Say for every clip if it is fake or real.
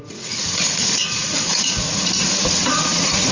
fake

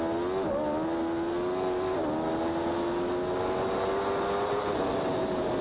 real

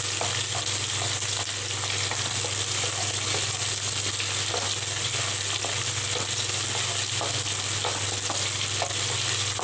real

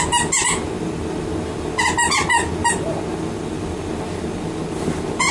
real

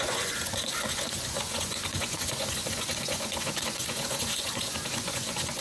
fake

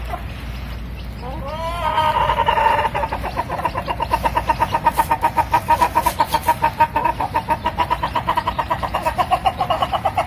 real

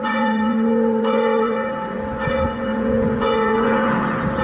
fake